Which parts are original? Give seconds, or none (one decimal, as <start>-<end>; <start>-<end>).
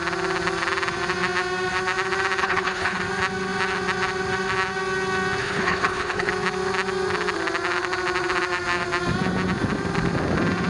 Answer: 0.0-2.4; 3.0-5.4; 6.3-10.7